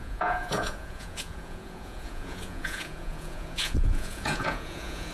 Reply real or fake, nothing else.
fake